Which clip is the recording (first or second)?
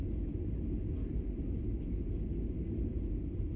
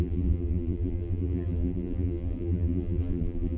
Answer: first